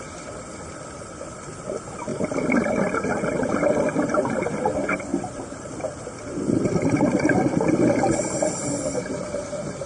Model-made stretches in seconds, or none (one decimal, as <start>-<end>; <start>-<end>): none